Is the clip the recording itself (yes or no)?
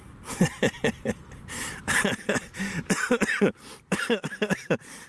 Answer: no